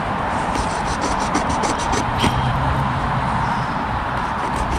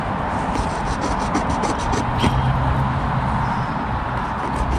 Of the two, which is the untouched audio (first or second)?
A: second